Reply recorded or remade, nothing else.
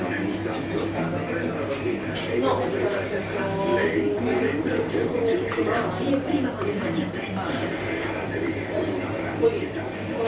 recorded